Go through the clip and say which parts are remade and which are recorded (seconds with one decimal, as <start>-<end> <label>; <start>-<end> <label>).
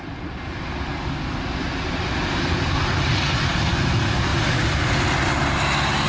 0.0-6.1 recorded